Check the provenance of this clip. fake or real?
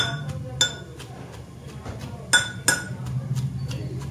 real